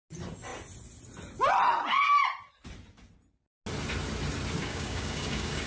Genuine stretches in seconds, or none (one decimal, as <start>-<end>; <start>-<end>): 0.0-4.6